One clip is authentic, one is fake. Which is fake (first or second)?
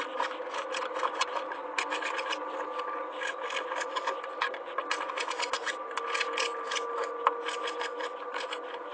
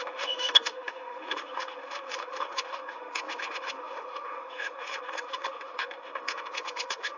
second